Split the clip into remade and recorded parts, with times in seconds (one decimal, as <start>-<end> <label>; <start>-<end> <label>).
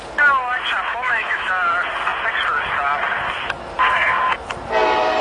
0.0-0.9 recorded; 0.9-1.5 remade; 1.5-5.2 recorded